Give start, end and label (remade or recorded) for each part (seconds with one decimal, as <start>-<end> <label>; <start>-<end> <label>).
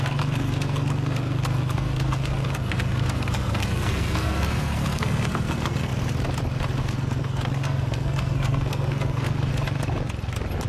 0.0-5.9 remade; 5.9-6.8 recorded; 6.8-9.5 remade; 9.5-10.7 recorded